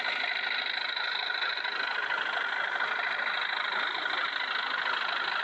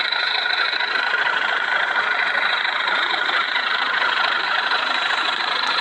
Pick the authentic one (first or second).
first